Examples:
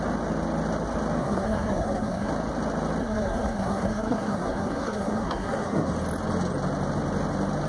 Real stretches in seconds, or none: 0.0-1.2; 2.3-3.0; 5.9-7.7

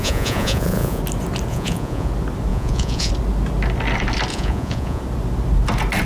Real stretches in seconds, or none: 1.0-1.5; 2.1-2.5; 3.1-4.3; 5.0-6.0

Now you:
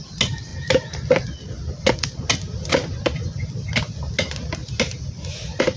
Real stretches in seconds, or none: 0.0-5.8